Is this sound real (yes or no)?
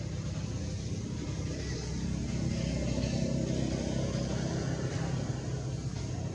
yes